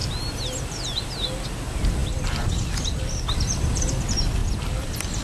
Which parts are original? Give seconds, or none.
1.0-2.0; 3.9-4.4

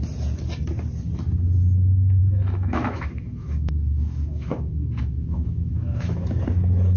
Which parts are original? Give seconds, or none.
0.0-2.2; 6.4-7.0

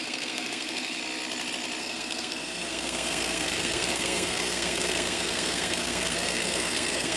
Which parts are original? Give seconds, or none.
1.0-1.8

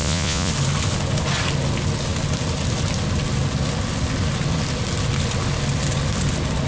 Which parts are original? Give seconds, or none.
0.5-6.7

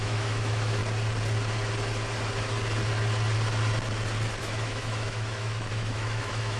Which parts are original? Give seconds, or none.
0.8-4.4

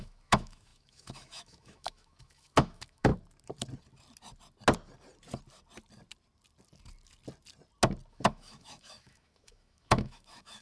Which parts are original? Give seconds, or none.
3.1-8.1